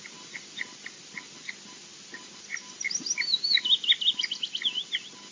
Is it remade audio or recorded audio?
recorded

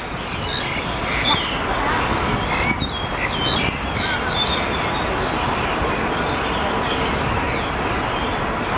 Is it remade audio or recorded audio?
recorded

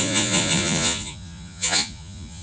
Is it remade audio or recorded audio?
remade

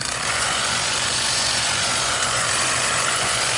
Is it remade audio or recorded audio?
remade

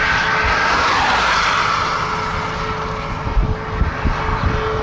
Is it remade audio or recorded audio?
recorded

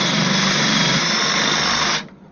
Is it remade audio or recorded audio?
recorded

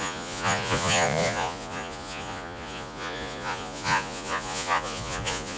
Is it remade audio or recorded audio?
remade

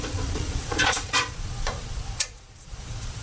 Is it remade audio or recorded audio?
remade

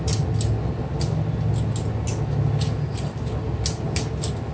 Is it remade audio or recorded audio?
recorded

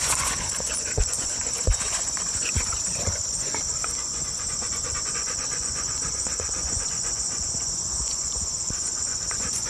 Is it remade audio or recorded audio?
remade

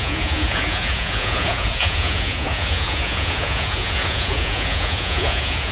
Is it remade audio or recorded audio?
remade